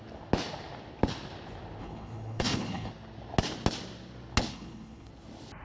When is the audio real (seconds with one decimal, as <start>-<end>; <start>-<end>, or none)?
0.0-1.8; 2.9-4.5; 5.1-5.6